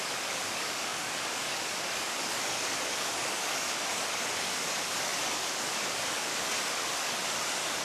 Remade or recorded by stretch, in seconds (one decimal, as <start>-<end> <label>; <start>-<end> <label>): 0.0-7.8 remade